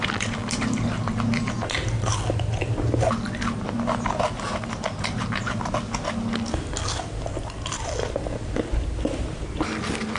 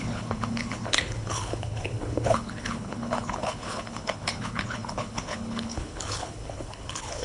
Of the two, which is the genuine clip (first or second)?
first